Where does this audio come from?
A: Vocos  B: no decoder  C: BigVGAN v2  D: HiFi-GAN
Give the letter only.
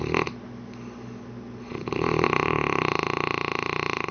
B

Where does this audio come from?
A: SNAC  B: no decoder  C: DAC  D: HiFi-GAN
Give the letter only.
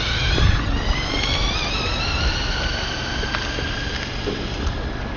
B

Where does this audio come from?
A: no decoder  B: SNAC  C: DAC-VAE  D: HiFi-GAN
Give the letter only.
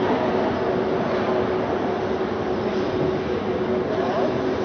A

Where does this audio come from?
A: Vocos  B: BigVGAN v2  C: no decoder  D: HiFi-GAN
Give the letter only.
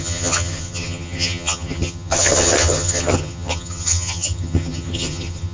D